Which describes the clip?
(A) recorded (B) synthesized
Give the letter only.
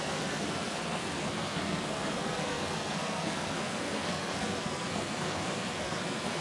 B